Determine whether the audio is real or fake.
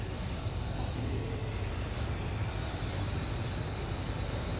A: fake